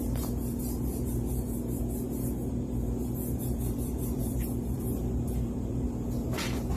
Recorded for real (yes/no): no